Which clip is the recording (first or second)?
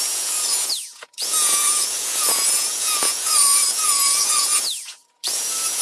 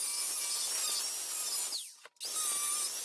second